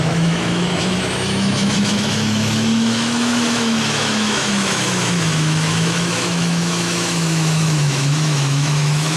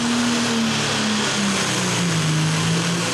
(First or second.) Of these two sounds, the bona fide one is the second